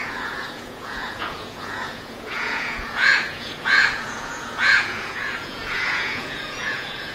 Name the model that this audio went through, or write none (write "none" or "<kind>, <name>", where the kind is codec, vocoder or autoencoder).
vocoder, Vocos